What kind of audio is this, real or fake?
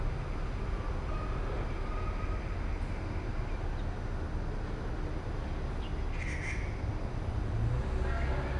real